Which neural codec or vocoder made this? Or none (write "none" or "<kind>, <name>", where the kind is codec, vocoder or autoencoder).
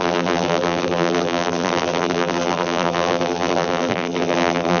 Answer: vocoder, BigVGAN v2